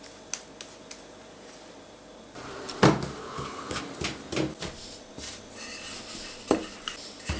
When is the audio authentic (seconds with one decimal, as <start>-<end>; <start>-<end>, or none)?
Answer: 0.0-3.2; 3.8-7.4